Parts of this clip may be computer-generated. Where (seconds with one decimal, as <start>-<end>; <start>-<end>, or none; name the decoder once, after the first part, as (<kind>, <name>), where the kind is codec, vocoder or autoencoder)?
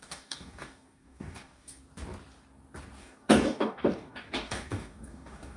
0.0-1.8 (codec, DAC); 3.0-5.6